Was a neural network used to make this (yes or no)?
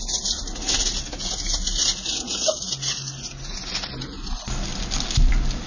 no